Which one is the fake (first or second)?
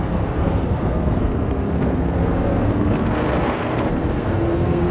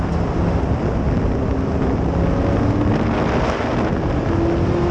first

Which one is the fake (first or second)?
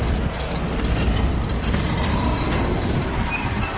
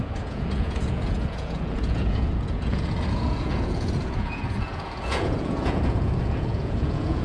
second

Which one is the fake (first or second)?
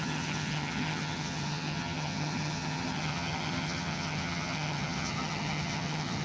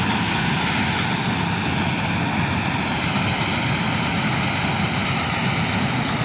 first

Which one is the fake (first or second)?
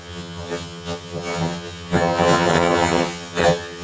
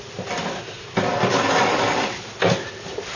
first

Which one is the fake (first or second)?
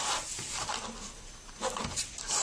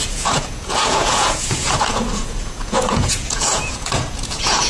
second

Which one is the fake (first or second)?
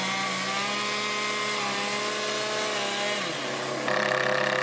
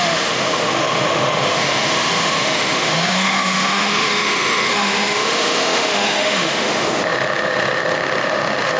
second